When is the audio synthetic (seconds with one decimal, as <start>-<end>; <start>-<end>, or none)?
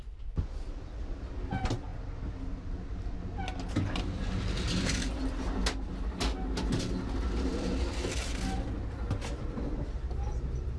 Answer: none